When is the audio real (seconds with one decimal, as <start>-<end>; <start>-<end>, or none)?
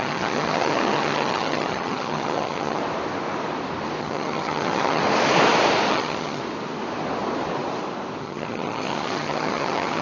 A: 2.8-4.0; 5.0-5.9; 6.4-8.2